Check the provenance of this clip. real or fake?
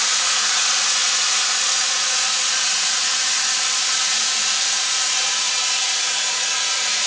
fake